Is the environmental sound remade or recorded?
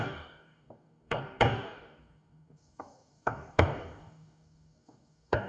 remade